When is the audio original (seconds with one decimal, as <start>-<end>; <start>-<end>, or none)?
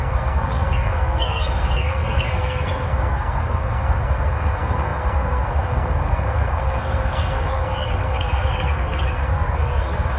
none